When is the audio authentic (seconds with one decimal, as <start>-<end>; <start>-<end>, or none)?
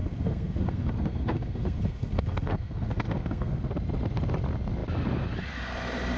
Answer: 3.7-6.2